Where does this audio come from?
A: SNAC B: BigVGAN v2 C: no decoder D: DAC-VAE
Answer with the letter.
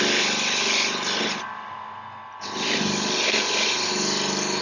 C